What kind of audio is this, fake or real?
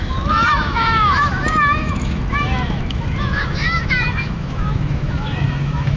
fake